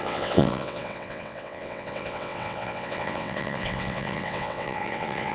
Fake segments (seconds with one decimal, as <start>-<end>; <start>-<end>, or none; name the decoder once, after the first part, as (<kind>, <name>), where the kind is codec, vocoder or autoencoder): 0.0-5.3 (vocoder, WaveNeXt)